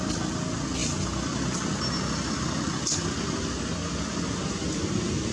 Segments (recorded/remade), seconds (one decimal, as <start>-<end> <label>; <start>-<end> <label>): 0.0-5.3 recorded